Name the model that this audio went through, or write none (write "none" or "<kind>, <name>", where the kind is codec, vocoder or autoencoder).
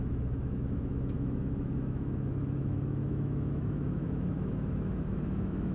autoencoder, DAC-VAE